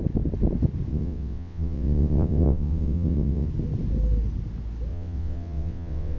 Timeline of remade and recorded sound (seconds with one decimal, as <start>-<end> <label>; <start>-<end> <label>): 0.0-0.9 recorded; 0.9-3.5 remade; 3.5-4.9 recorded; 4.9-6.2 remade